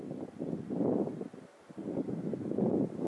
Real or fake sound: real